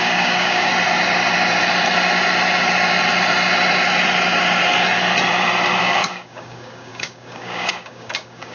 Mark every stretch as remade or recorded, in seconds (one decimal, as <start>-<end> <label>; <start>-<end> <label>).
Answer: 0.0-0.7 remade; 0.7-5.8 recorded; 5.8-8.5 remade